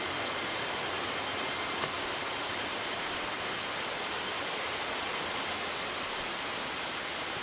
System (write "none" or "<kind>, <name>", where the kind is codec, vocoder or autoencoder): none